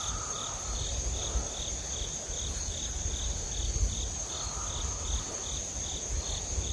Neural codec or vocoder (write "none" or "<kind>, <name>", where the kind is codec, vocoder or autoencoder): none